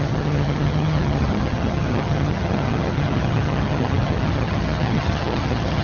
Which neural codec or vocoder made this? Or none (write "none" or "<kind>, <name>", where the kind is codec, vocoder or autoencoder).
vocoder, HiFi-GAN